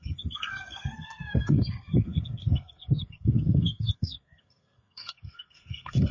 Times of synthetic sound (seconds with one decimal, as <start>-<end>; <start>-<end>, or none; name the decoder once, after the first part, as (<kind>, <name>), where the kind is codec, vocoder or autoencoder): 0.0-6.1 (codec, SNAC)